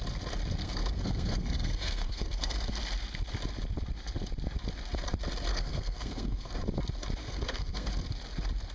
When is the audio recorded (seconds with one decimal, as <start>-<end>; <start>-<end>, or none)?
0.0-0.6; 2.8-5.5; 6.5-7.2; 7.9-8.7